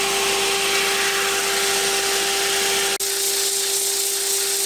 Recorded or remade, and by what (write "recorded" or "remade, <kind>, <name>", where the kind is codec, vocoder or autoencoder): recorded